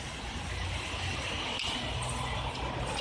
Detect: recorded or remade recorded